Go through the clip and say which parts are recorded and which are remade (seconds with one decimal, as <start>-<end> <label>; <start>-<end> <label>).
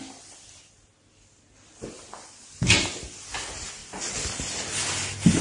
0.0-5.4 recorded